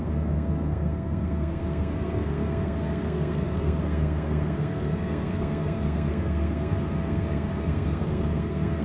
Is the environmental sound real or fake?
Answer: fake